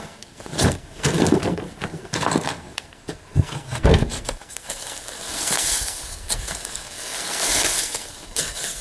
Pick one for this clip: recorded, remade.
remade